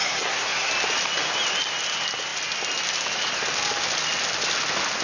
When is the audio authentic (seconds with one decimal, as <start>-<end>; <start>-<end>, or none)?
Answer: 0.7-5.0